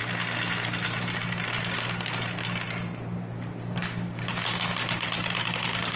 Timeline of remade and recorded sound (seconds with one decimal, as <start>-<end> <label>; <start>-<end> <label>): 0.0-3.6 recorded; 3.6-4.7 remade; 4.7-5.5 recorded; 5.5-6.0 remade